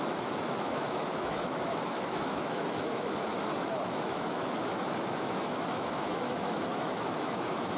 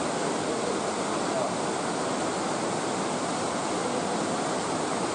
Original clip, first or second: second